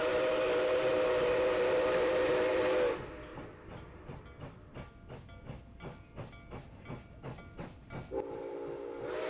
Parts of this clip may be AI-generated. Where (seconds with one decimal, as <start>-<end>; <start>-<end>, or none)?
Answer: 3.3-4.2